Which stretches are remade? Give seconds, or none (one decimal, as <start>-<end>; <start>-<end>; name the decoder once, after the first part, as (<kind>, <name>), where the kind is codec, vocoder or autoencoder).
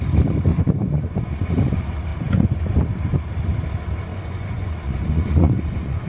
0.5-1.5 (vocoder, Vocos); 2.1-2.7; 4.1-6.1